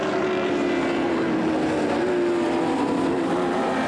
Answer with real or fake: real